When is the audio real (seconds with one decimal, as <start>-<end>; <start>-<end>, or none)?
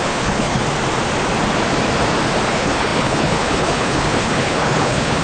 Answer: 0.6-2.5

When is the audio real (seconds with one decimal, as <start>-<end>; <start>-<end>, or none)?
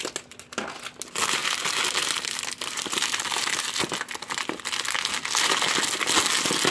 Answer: 0.0-6.7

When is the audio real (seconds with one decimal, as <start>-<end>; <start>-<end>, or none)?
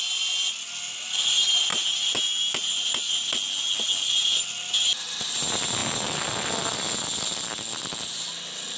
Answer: 0.0-8.8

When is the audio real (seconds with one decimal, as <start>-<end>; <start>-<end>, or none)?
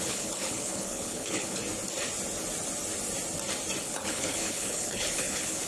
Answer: 1.6-3.8